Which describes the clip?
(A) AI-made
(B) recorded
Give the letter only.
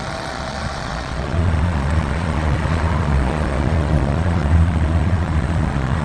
A